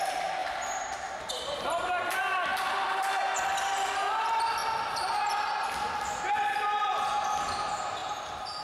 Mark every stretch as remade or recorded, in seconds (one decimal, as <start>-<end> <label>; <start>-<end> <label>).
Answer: 0.0-0.4 recorded; 0.4-1.3 remade; 1.3-4.6 recorded; 4.6-5.2 remade; 5.2-8.0 recorded; 8.0-8.6 remade